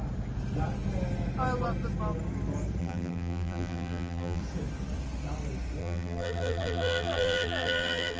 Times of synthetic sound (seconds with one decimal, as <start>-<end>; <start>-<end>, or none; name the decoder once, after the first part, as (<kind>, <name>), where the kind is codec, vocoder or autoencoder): 2.8-4.4 (vocoder, BigVGAN v2); 5.8-8.2